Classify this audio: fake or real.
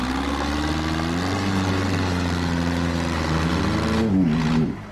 real